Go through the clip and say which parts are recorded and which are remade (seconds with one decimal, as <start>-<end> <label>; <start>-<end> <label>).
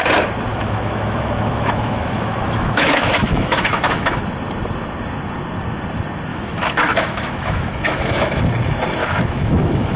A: 0.0-0.5 recorded; 0.5-4.2 remade; 4.2-6.3 recorded; 6.3-8.4 remade; 8.4-9.0 recorded; 9.0-10.0 remade